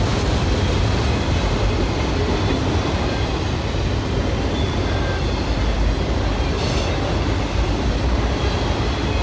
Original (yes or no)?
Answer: yes